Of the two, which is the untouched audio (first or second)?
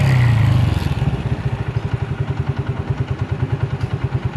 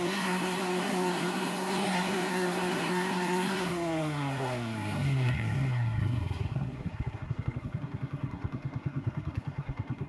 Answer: first